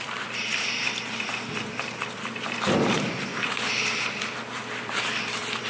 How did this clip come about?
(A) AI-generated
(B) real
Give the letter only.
A